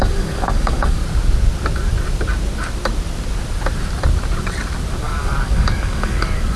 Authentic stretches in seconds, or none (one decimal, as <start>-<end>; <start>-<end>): 1.0-5.0